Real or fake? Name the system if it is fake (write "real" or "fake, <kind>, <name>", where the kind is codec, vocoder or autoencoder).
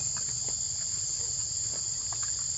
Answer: real